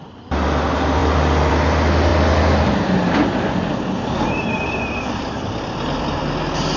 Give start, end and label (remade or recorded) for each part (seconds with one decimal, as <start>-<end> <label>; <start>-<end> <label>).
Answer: 0.0-6.8 recorded